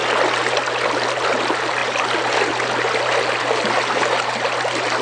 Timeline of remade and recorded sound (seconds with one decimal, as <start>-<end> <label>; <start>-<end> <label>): 0.0-5.0 recorded